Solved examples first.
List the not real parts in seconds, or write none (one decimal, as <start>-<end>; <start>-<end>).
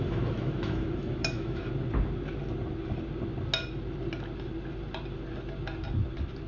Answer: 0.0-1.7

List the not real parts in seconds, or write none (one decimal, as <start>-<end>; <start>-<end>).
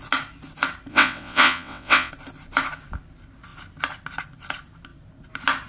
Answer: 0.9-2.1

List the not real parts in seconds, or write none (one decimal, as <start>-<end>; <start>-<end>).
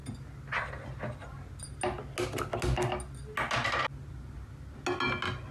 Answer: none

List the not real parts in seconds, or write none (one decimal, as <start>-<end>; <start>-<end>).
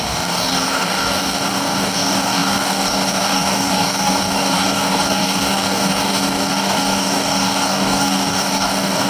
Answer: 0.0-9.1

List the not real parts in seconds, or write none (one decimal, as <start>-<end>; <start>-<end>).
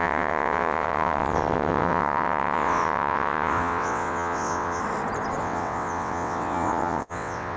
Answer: 0.0-4.8; 5.4-7.6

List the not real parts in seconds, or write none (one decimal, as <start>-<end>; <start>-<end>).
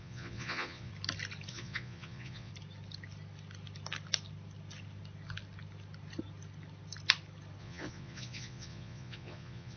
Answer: 0.0-0.9; 1.5-2.5; 7.6-9.8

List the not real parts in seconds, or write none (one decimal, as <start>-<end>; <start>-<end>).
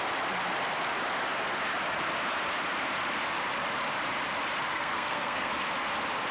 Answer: 4.7-5.5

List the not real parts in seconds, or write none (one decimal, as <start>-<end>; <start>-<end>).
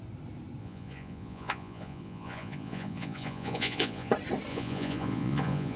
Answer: 0.6-4.1; 4.5-5.8